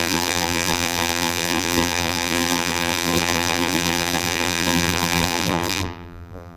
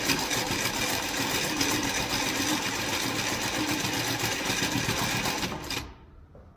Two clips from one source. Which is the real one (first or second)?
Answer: second